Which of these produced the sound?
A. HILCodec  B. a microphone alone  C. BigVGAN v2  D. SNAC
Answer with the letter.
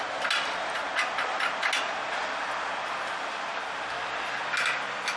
B